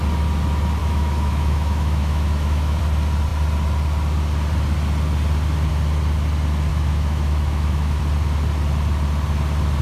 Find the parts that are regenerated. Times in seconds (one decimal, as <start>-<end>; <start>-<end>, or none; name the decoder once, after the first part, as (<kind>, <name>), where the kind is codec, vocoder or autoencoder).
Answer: 0.8-2.8 (autoencoder, DAC-VAE); 6.7-8.0